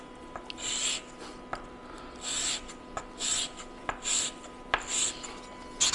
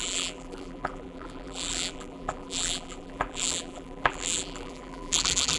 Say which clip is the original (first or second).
first